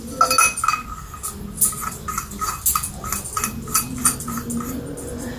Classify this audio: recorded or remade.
recorded